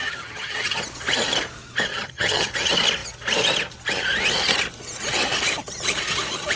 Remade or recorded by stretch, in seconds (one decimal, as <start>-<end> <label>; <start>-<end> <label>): 0.0-0.8 remade; 0.8-1.9 recorded; 1.9-2.5 remade; 2.5-6.6 recorded